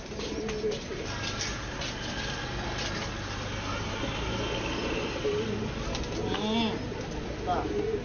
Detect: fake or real real